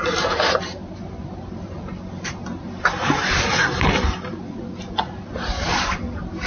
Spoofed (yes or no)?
yes